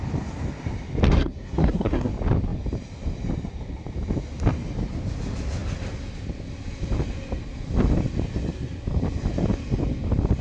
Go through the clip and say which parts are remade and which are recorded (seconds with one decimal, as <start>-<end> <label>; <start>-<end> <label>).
0.0-1.1 recorded; 1.1-2.1 remade; 2.1-10.4 recorded